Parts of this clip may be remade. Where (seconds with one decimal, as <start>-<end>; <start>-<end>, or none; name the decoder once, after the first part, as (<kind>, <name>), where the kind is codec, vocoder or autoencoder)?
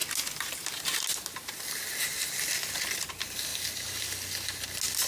3.5-4.0 (vocoder, BigVGAN v2)